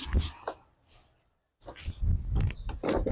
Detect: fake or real real